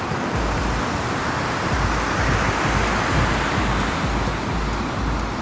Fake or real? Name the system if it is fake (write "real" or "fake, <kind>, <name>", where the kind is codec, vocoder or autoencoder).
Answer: real